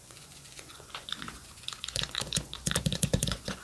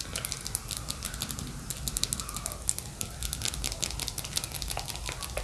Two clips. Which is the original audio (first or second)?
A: second